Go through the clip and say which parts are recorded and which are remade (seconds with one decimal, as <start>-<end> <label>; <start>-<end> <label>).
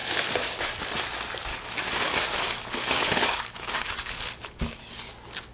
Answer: 0.0-0.8 remade; 0.8-1.5 recorded; 1.5-4.8 remade; 4.8-5.5 recorded